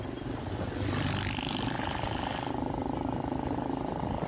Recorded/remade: recorded